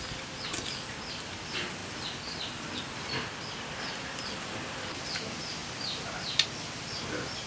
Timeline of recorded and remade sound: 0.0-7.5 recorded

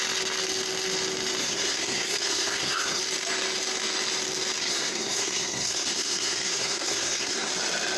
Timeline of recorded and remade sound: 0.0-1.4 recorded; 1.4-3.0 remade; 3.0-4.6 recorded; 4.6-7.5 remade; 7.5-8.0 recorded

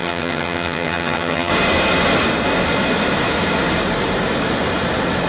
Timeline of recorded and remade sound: 0.0-1.5 remade; 1.5-5.3 recorded